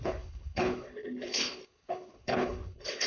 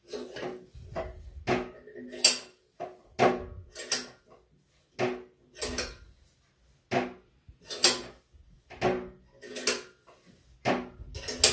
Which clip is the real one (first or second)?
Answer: second